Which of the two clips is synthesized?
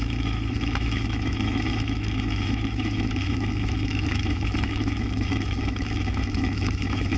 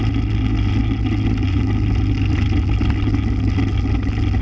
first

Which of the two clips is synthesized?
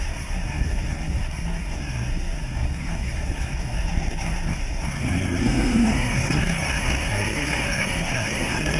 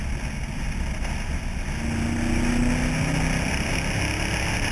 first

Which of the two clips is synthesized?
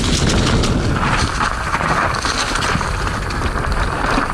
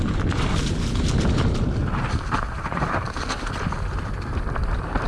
second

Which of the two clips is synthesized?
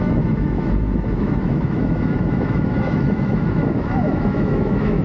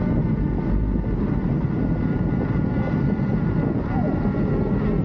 first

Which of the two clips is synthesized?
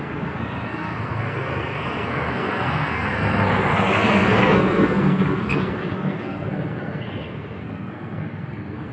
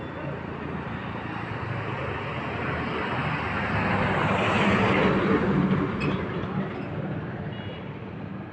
first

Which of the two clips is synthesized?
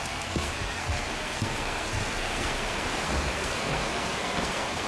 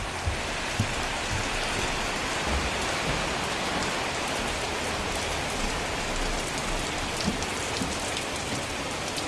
first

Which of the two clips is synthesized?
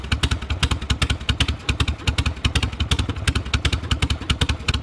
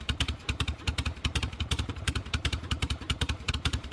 second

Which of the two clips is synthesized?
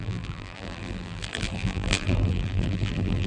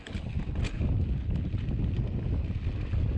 first